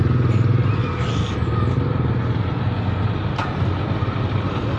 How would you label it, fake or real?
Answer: real